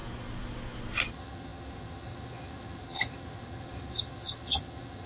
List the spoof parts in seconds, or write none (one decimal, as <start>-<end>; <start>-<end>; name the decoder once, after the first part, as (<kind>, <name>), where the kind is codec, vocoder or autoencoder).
1.1-5.1 (vocoder, HiFi-GAN)